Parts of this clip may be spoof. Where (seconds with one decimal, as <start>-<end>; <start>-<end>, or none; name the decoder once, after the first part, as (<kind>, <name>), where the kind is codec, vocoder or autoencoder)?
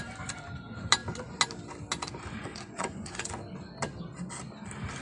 2.5-3.3 (vocoder, Vocos)